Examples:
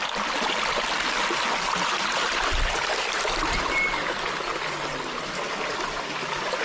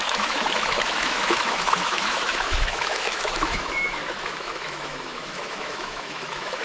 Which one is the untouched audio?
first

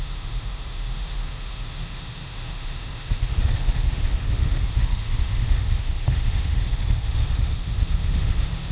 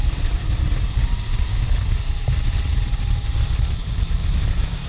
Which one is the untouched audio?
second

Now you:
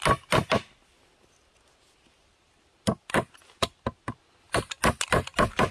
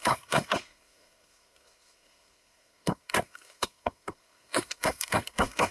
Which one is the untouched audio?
first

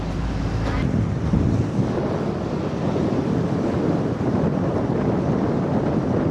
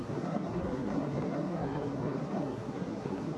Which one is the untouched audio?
first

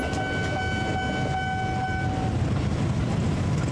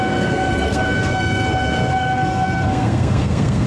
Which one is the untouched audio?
first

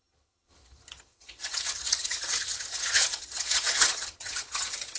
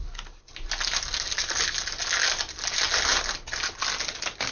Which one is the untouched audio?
second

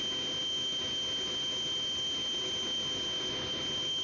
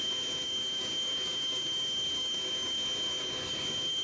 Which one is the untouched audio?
first